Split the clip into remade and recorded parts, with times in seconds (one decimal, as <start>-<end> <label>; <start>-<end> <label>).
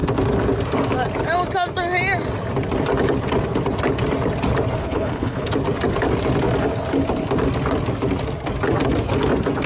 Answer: 0.0-4.8 recorded; 4.8-5.5 remade; 5.5-9.7 recorded